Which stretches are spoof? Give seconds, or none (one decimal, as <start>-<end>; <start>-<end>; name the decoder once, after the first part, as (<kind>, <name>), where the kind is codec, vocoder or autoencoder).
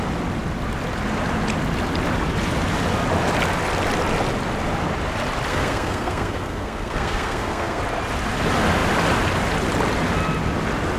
5.5-7.8 (codec, SNAC)